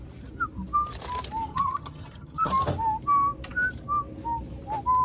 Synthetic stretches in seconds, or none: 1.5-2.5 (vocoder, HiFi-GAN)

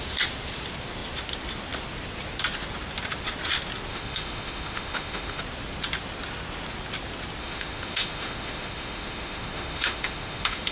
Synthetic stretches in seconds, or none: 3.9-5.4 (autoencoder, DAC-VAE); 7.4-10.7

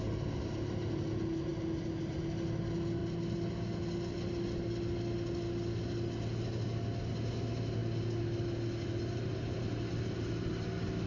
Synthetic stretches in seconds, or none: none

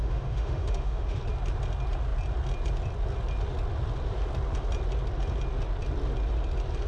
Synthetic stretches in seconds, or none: 0.0-1.2 (autoencoder, DAC-VAE)